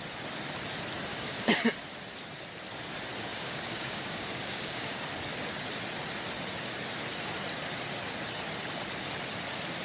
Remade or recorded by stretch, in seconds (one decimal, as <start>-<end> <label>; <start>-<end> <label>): 0.0-1.1 recorded; 1.1-1.6 remade; 1.6-3.3 recorded; 3.3-5.0 remade; 5.0-9.8 recorded